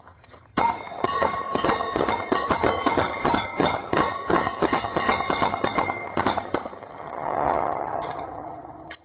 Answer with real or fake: fake